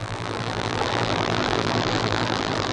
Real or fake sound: fake